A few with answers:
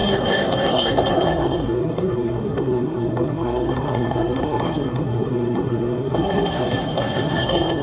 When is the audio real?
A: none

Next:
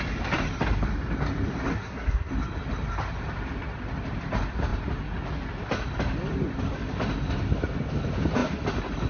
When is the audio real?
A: 0.0-1.7; 2.3-9.1